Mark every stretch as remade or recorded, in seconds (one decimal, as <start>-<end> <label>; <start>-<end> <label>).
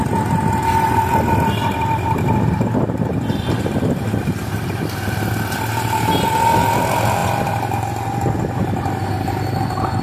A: 0.0-10.0 recorded